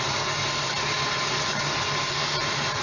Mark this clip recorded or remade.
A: recorded